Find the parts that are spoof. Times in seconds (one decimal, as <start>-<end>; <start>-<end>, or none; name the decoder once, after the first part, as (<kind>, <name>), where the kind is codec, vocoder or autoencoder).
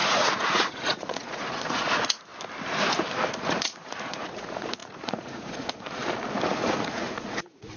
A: 0.0-2.3 (vocoder, Vocos); 3.3-6.0; 6.6-7.8